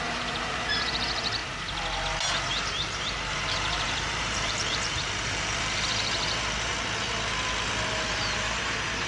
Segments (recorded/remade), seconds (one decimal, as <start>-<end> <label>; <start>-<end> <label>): 0.0-1.4 remade; 1.4-2.5 recorded; 2.5-6.7 remade; 6.7-7.9 recorded; 7.9-9.1 remade